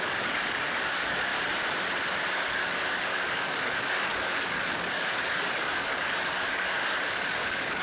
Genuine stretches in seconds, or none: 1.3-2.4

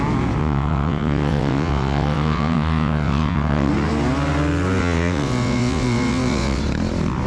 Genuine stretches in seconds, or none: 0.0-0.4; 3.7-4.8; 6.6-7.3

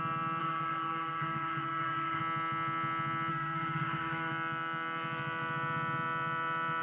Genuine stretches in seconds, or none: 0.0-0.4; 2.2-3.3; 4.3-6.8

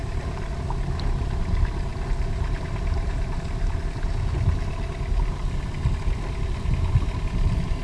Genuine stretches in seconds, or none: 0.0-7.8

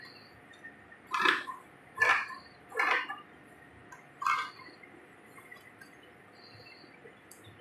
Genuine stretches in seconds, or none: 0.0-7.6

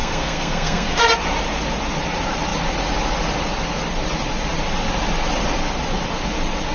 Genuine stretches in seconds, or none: 1.1-6.7

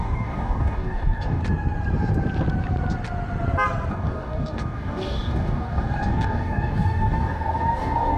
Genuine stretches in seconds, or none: 1.4-3.9

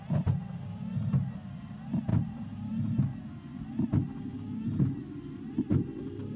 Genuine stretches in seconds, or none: 0.0-2.1; 2.7-6.4